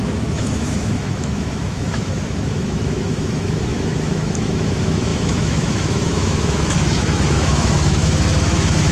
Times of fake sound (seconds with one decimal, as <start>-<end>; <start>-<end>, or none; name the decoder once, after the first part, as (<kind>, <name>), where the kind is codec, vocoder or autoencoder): 0.0-8.9 (autoencoder, DAC-VAE)